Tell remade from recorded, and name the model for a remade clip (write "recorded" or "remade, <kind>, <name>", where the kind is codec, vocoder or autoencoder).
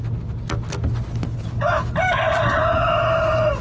recorded